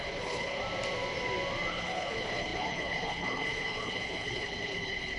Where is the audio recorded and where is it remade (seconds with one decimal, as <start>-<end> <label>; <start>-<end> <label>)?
0.0-0.6 remade; 0.6-1.7 recorded; 1.7-5.2 remade